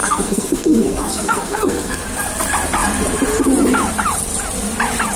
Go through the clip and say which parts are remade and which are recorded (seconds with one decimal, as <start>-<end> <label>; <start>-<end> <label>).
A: 0.0-2.0 remade; 2.0-5.2 recorded

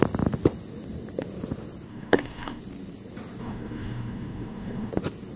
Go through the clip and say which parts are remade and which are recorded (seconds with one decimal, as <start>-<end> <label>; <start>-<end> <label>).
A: 0.0-1.9 recorded; 1.9-2.6 remade; 2.6-3.4 recorded; 3.4-4.9 remade; 4.9-5.4 recorded

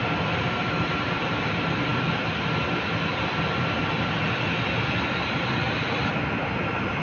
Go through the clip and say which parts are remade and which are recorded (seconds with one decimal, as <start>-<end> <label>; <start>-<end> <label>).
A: 0.0-7.0 recorded